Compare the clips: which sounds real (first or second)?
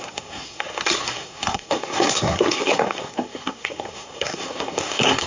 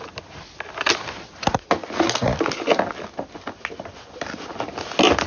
second